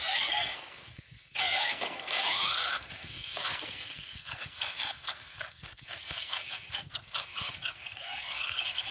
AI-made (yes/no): yes